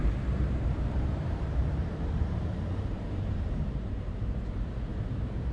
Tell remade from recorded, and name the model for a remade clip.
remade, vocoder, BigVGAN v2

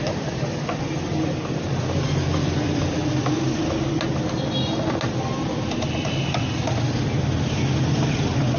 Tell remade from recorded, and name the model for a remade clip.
recorded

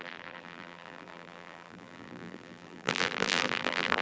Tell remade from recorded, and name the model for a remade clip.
remade, vocoder, BigVGAN v2